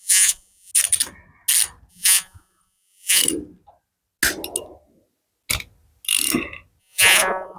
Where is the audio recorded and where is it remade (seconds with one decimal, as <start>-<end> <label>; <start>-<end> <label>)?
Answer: 0.0-0.7 remade; 0.7-1.9 recorded; 1.9-3.2 remade; 3.2-6.8 recorded; 6.8-7.6 remade